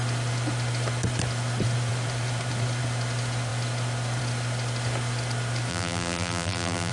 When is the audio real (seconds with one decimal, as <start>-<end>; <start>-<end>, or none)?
0.0-5.7